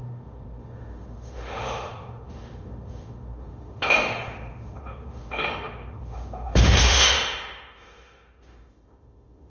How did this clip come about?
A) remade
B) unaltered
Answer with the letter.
A